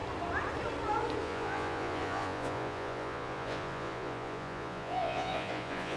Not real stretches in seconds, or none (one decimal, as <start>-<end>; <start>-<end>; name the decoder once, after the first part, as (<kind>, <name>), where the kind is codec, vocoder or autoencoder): 1.2-6.0 (vocoder, Vocos)